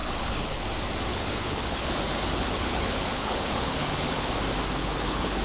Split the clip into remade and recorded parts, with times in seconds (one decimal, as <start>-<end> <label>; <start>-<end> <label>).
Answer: 0.0-0.6 remade; 0.6-1.1 recorded; 1.1-4.3 remade; 4.3-4.8 recorded; 4.8-5.4 remade